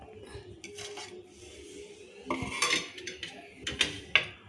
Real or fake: real